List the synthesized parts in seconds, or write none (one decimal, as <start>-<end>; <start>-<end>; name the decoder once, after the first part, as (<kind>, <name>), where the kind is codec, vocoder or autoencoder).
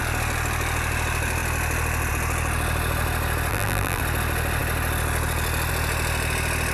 3.5-4.0 (vocoder, BigVGAN v2)